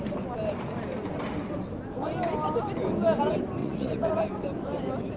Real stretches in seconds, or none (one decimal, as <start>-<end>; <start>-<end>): 0.0-3.6; 4.1-5.2